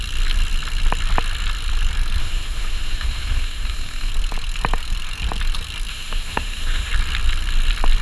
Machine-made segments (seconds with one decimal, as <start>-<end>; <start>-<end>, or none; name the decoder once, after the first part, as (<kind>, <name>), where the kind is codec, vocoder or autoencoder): 2.2-4.1 (autoencoder, DAC-VAE); 5.9-6.9